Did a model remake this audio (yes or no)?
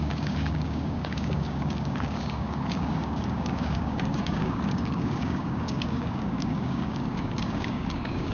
yes